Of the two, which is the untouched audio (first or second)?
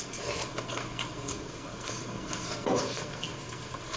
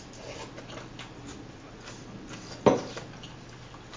second